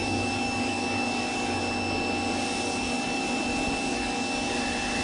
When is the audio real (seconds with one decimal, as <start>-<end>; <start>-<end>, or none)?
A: 1.6-2.7; 3.2-3.9; 4.6-5.0